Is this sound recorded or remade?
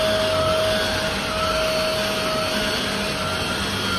recorded